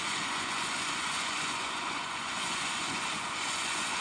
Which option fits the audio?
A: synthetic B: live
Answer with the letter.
A